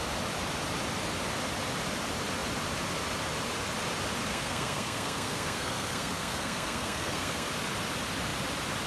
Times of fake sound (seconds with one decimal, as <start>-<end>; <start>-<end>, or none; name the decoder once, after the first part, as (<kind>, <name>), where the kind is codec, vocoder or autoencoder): 4.3-7.5 (codec, SNAC)